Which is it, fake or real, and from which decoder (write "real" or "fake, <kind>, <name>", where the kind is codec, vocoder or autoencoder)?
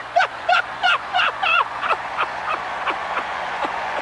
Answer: fake, vocoder, Vocos